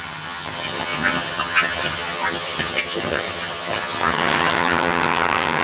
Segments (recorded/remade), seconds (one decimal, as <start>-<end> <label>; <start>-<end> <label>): 0.0-5.6 remade

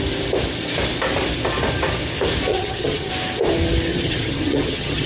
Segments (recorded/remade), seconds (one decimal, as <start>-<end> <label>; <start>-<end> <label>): 0.0-2.5 recorded; 2.5-3.1 remade; 3.1-3.9 recorded; 3.9-5.1 remade